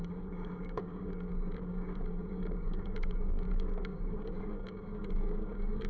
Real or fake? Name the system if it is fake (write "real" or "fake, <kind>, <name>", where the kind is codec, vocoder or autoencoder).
fake, codec, DAC